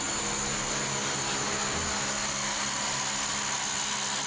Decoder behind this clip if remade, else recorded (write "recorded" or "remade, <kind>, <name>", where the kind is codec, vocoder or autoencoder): recorded